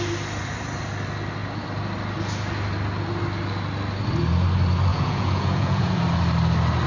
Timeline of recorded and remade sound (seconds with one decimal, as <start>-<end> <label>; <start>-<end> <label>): 0.0-4.9 recorded; 4.9-6.0 remade; 6.0-6.9 recorded